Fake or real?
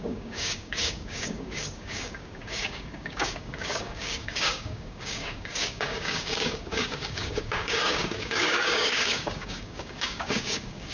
fake